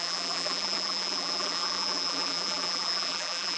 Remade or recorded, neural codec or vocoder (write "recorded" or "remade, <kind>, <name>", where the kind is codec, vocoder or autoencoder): remade, vocoder, BigVGAN v2